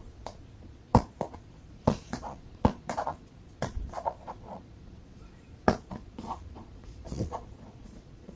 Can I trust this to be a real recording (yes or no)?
no